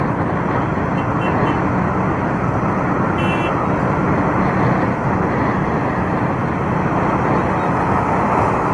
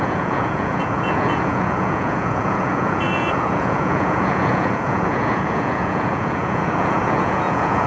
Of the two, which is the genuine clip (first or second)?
first